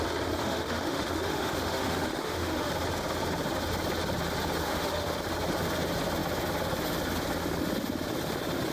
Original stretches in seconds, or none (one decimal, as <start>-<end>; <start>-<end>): 0.0-0.4; 2.7-4.6; 5.2-8.7